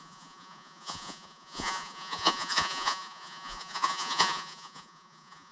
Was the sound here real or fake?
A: fake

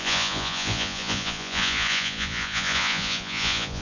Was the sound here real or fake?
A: fake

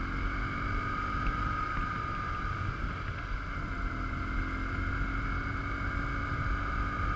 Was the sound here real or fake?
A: real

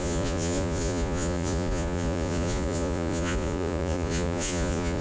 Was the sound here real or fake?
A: fake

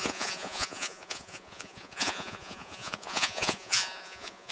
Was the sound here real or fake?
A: fake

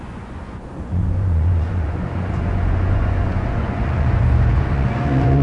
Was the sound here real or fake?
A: fake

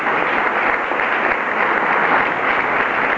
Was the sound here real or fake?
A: real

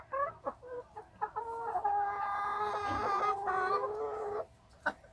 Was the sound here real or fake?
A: real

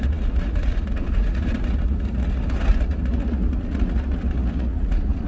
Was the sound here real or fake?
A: fake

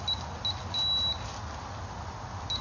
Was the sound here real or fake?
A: real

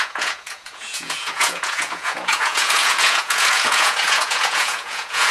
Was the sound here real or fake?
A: fake